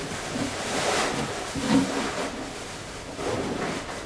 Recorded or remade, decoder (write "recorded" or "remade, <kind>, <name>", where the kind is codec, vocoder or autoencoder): recorded